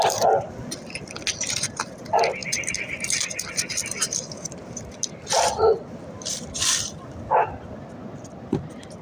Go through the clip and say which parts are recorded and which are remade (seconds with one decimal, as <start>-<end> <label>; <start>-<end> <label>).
0.0-2.4 recorded; 2.4-7.6 remade; 7.6-9.0 recorded